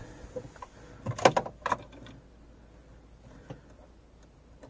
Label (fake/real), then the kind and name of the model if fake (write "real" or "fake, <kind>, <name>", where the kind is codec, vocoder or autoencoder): real